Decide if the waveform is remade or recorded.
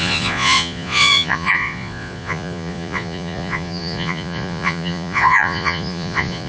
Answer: remade